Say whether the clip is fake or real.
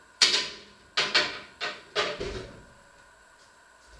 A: real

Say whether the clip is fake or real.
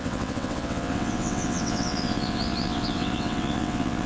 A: fake